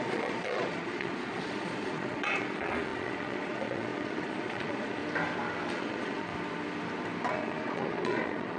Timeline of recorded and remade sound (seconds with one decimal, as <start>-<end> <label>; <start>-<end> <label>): 0.0-5.0 remade; 5.0-5.7 recorded; 5.7-6.3 remade; 6.3-7.3 recorded; 7.3-8.6 remade